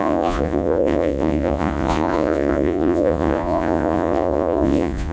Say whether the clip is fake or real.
fake